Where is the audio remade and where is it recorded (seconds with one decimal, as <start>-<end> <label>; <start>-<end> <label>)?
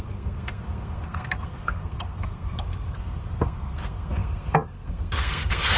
0.0-5.8 remade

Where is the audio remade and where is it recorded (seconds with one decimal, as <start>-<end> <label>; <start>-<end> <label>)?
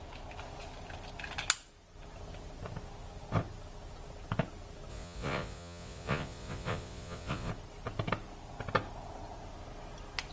0.0-4.9 recorded; 4.9-7.5 remade; 7.5-10.3 recorded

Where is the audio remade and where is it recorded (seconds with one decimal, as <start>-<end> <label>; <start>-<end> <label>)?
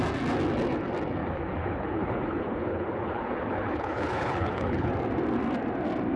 0.0-1.2 recorded; 1.2-4.9 remade; 4.9-6.2 recorded